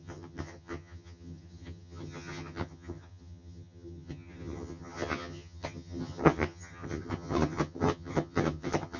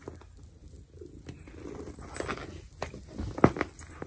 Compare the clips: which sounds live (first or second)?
second